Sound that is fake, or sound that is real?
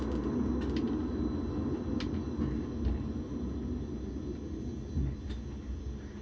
real